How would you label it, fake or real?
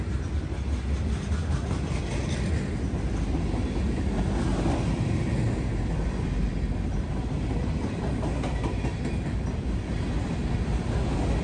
real